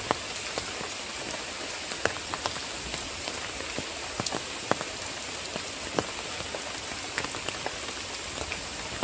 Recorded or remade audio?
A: recorded